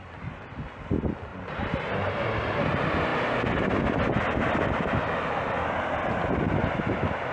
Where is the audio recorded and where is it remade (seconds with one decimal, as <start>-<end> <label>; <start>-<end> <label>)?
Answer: 0.0-1.3 recorded; 1.3-2.5 remade; 2.5-7.3 recorded